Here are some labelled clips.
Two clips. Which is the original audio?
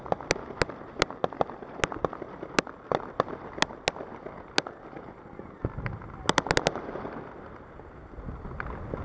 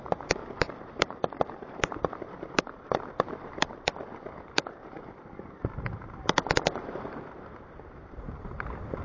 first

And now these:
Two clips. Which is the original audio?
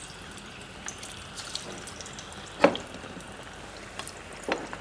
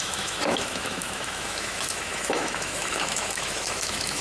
first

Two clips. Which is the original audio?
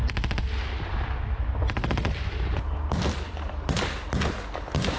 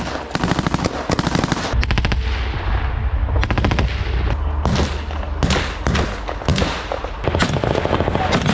second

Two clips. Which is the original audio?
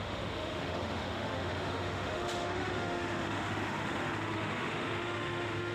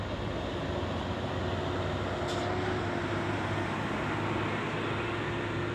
second